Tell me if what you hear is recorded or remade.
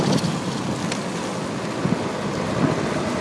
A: recorded